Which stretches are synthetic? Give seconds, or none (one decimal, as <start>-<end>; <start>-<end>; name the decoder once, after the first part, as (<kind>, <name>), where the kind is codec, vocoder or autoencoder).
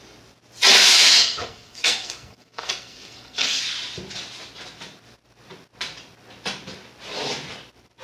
0.8-3.6 (codec, SNAC)